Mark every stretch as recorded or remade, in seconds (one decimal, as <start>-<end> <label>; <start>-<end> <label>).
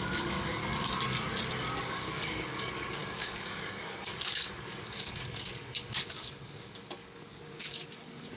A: 0.0-0.6 remade; 0.6-1.8 recorded; 1.8-8.4 remade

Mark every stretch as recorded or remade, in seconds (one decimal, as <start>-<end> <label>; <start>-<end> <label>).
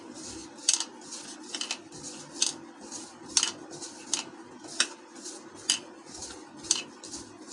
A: 0.0-7.5 recorded